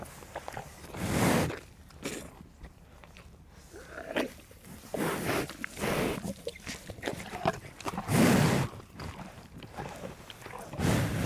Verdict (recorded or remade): recorded